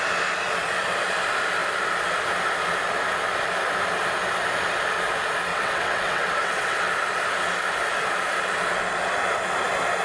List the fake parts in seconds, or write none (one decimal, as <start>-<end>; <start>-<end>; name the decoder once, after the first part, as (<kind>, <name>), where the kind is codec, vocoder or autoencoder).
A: 5.5-6.9 (vocoder, WaveNeXt)